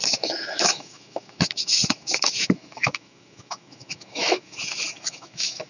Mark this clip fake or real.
fake